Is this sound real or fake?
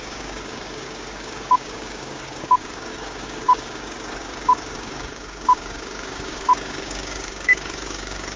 fake